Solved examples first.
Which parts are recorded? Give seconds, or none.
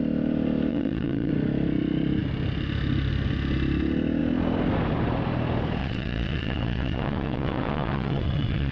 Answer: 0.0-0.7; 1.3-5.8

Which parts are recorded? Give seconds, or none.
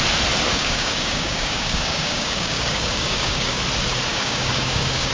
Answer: 0.0-0.5; 3.6-4.1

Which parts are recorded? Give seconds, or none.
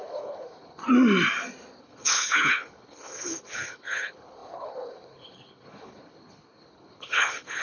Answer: 0.8-1.8